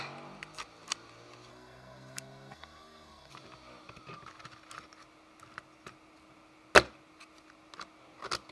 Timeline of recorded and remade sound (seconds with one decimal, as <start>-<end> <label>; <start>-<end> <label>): 0.0-1.5 recorded; 1.5-3.3 remade; 3.3-8.5 recorded